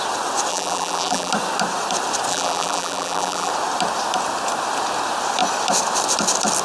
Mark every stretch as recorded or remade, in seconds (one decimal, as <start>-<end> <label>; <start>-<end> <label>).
0.0-0.5 recorded; 0.5-1.3 remade; 1.3-2.3 recorded; 2.3-3.5 remade; 3.5-6.6 recorded